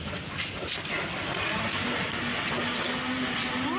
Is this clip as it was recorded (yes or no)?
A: yes